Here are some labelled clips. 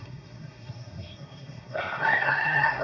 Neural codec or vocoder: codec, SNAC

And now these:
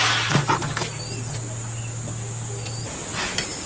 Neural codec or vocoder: none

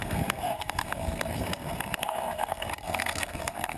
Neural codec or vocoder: codec, SNAC